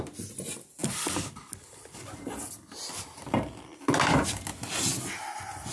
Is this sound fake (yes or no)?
no